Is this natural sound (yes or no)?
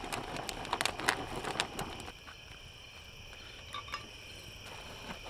yes